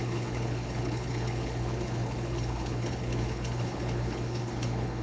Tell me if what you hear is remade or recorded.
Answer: remade